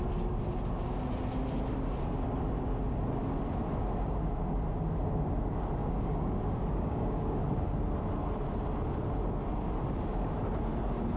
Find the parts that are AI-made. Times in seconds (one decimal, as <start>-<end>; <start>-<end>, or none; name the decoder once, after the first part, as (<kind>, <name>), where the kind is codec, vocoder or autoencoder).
5.8-7.4 (codec, DAC)

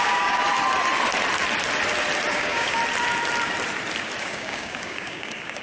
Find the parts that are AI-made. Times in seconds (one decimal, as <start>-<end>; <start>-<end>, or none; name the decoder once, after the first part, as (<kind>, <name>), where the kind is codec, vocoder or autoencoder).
0.0-0.4 (codec, DAC); 2.3-2.8; 4.2-5.6

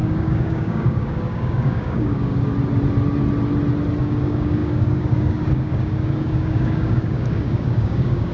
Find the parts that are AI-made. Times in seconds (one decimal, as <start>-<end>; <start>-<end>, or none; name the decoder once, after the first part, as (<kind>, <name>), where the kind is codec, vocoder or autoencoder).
0.0-2.5 (codec, DAC); 4.0-8.3

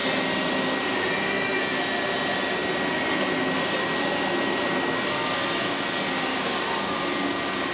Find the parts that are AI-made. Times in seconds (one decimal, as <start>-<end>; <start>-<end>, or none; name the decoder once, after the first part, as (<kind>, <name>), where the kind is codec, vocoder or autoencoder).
6.3-7.0 (codec, DAC)

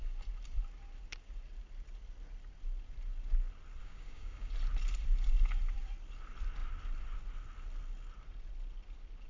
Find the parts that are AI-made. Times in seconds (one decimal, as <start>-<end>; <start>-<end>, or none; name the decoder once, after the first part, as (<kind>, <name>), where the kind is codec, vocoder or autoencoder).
3.8-4.5 (codec, DAC)

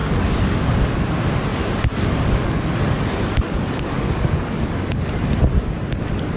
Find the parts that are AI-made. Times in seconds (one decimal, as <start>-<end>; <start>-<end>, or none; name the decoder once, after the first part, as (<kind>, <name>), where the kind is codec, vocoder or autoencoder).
0.0-1.0 (codec, DAC); 1.5-5.3

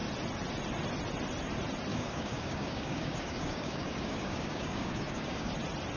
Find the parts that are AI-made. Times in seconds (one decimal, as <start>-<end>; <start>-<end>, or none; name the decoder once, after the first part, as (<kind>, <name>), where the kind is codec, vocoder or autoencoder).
1.9-5.5 (codec, DAC)